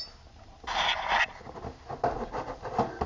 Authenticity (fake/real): real